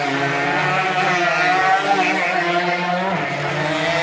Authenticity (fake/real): real